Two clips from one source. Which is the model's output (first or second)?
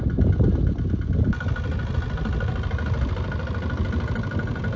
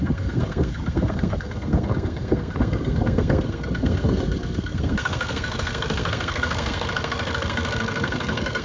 second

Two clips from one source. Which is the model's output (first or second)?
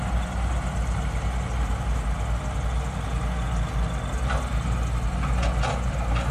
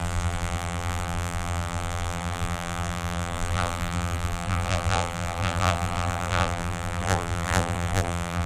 second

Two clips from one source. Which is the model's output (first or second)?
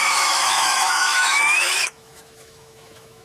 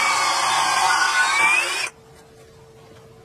first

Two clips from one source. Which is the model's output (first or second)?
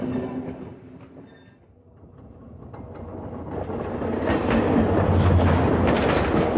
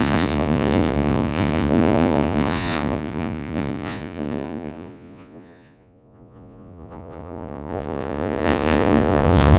second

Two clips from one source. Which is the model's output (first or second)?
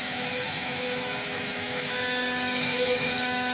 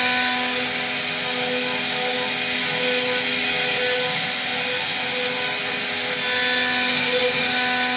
first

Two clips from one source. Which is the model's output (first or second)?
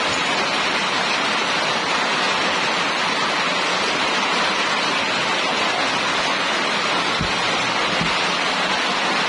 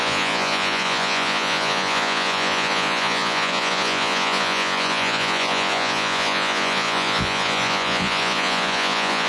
second